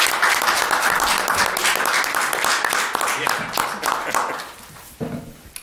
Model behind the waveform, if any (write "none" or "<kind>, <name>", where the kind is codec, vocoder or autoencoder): none